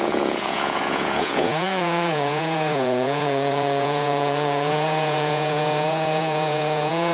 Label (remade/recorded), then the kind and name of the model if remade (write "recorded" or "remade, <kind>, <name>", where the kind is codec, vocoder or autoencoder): remade, vocoder, Vocos